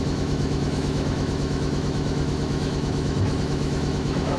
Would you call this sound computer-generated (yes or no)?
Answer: yes